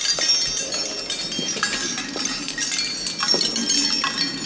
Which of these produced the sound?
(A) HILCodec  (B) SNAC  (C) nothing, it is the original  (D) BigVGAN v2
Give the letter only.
C